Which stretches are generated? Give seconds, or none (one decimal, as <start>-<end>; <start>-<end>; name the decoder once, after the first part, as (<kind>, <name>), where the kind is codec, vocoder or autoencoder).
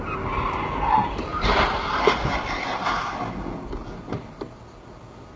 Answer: 1.3-3.1 (vocoder, BigVGAN v2)